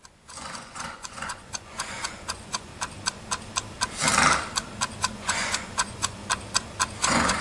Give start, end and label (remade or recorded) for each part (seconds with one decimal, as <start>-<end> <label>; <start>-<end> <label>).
0.0-2.7 remade; 2.7-5.0 recorded; 5.0-6.2 remade; 6.2-7.0 recorded; 7.0-7.4 remade